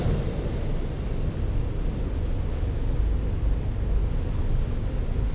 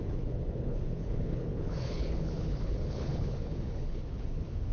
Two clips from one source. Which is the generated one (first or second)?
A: second